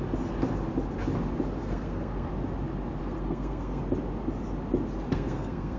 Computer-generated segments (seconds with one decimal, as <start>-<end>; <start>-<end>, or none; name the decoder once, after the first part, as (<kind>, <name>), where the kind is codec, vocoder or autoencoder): 1.6-2.3 (codec, SNAC); 3.0-3.8; 5.1-5.8